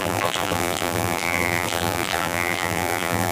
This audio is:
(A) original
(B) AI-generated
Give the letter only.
B